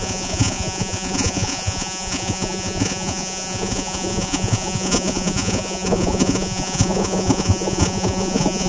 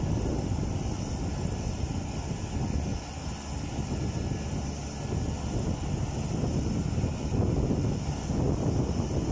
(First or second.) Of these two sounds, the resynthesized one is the first